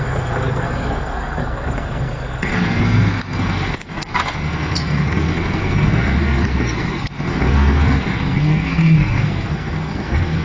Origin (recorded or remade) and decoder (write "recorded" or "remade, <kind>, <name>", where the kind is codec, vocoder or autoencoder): remade, codec, SNAC